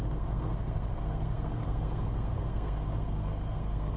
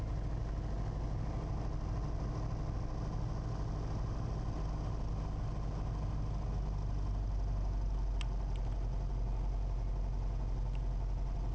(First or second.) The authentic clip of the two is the second